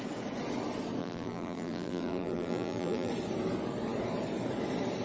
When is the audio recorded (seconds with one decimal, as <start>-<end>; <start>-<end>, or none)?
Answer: 0.0-1.0; 3.1-5.0